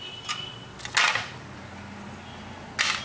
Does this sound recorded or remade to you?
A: recorded